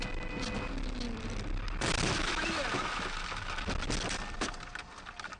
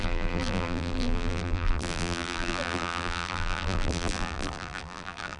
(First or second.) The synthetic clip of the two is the second